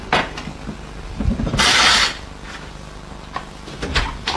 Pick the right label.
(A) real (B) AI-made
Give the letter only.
A